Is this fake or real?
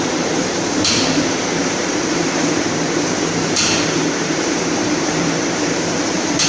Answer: fake